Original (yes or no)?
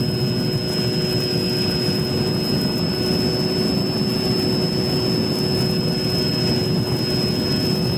yes